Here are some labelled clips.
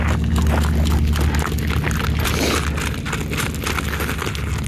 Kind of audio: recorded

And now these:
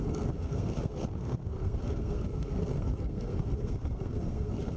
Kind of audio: remade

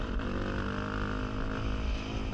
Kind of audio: recorded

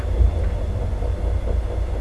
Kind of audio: recorded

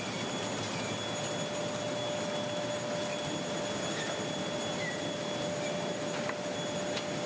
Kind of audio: recorded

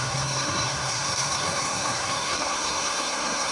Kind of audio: remade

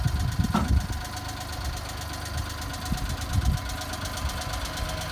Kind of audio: recorded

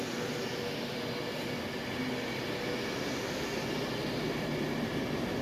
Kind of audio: recorded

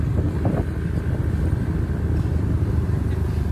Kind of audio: recorded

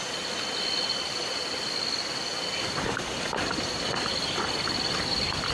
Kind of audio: recorded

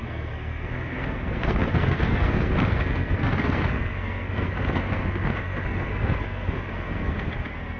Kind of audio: remade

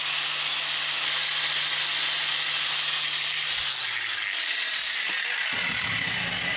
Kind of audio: recorded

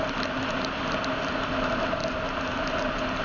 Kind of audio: recorded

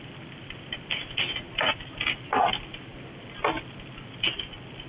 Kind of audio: recorded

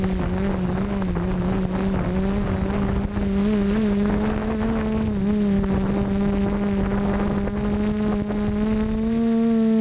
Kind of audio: recorded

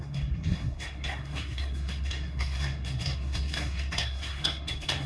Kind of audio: remade